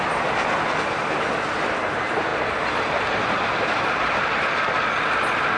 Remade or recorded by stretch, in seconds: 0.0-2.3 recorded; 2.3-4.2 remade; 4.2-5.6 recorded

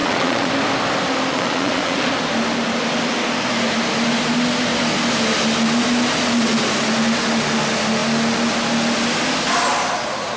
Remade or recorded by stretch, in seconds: 0.0-0.5 remade; 0.5-1.3 recorded; 1.3-2.1 remade; 2.1-10.4 recorded

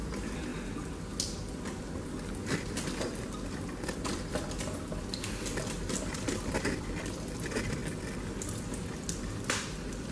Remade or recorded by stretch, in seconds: 0.0-0.5 remade; 0.5-4.0 recorded; 4.0-7.8 remade; 7.8-8.6 recorded; 8.6-10.1 remade

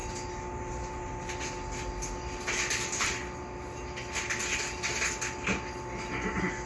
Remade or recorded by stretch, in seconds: 0.0-6.7 recorded